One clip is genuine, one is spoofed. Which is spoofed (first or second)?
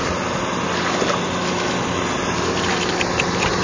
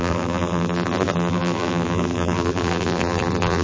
second